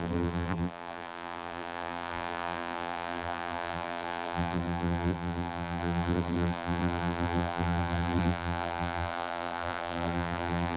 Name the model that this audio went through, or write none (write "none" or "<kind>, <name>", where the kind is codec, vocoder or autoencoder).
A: vocoder, BigVGAN v2